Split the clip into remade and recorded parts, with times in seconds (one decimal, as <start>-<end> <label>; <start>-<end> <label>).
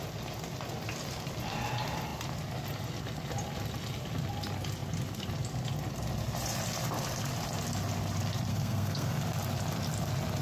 0.0-8.5 recorded; 8.5-9.2 remade; 9.2-10.4 recorded